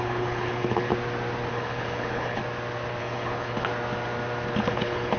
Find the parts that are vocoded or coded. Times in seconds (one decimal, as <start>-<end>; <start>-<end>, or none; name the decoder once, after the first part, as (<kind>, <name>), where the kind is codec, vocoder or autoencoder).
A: 0.0-0.9 (codec, HILCodec); 1.5-2.4; 3.0-3.7; 4.5-5.2